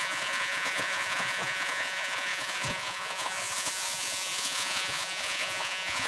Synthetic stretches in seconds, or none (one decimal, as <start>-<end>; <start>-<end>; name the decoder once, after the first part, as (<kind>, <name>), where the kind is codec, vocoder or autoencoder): 0.0-6.1 (vocoder, Vocos)

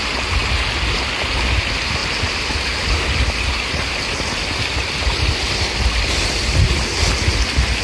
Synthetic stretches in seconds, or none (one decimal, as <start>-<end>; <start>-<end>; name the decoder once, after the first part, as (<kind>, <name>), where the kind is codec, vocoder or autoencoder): none

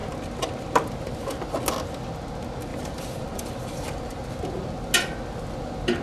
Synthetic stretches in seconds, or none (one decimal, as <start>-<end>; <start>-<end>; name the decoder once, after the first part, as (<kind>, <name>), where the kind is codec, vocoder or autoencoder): 2.7-4.4 (vocoder, BigVGAN v2)

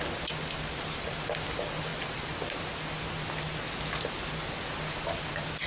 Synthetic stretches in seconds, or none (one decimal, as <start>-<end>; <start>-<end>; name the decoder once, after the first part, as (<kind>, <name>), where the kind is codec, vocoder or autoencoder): none

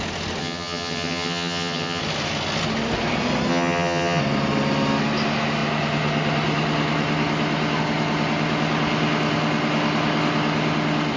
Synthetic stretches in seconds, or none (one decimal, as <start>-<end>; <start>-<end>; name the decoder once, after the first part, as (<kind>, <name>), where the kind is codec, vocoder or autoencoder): 0.4-2.0 (vocoder, HiFi-GAN); 3.5-4.2